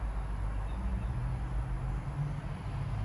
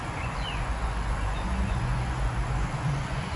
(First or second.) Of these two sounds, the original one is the first